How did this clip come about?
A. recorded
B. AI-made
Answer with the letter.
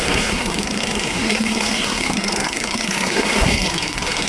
B